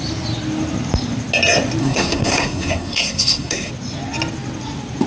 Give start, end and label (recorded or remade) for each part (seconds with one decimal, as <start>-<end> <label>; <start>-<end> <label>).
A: 0.0-1.8 recorded; 1.8-3.7 remade; 3.7-5.1 recorded